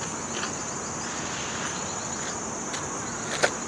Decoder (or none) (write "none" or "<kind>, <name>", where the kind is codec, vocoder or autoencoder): none